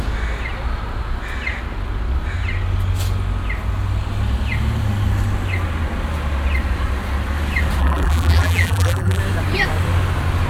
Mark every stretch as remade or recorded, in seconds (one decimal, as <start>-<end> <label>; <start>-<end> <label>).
0.0-7.8 recorded; 7.8-9.2 remade; 9.2-10.5 recorded